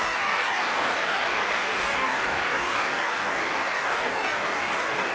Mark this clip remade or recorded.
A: remade